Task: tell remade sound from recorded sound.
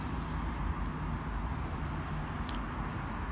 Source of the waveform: recorded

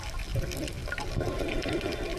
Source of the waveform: remade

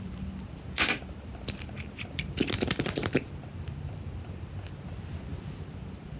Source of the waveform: remade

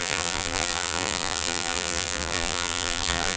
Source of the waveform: remade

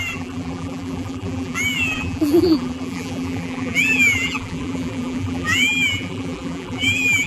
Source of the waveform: remade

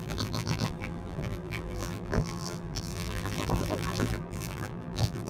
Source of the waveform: remade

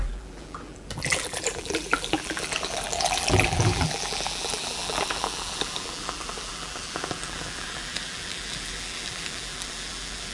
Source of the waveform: remade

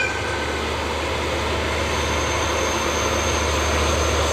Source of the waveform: recorded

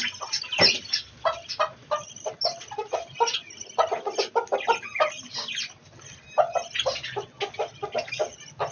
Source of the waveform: recorded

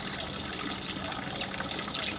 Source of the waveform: remade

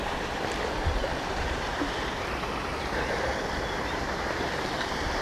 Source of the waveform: remade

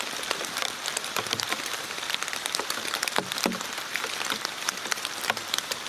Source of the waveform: remade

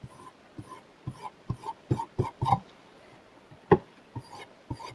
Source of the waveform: recorded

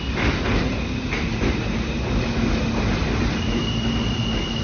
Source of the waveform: recorded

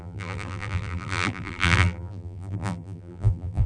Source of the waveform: remade